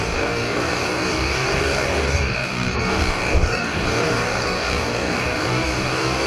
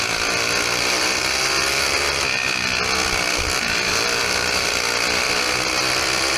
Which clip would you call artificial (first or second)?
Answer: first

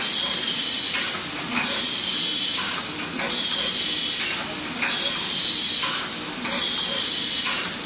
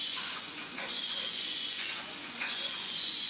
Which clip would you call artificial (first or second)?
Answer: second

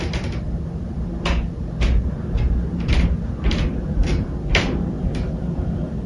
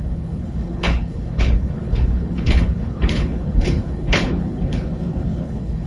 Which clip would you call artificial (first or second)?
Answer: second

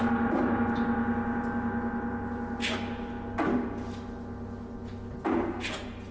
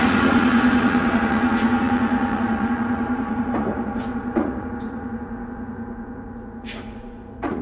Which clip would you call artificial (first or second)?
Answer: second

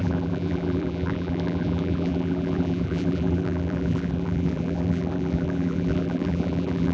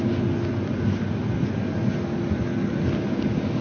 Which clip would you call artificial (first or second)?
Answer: first